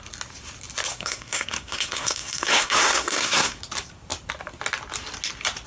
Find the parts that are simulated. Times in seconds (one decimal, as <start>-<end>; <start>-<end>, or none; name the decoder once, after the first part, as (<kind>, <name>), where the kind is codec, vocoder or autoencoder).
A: 0.9-3.6 (codec, SNAC)